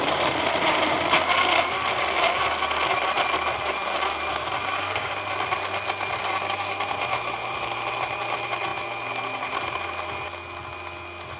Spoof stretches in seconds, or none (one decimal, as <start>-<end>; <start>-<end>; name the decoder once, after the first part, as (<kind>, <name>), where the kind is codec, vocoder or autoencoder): 4.3-5.1 (codec, DAC)